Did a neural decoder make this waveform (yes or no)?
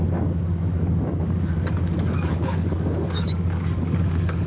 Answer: yes